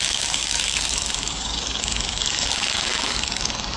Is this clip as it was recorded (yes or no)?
no